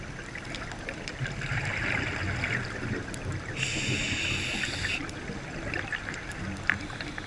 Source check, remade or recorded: recorded